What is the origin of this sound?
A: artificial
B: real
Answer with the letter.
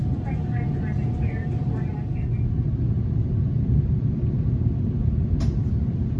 B